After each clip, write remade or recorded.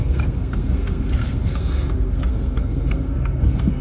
remade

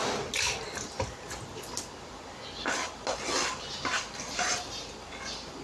recorded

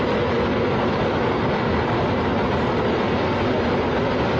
recorded